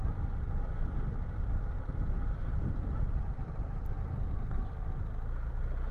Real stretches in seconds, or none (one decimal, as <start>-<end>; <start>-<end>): 0.0-1.2; 4.7-5.9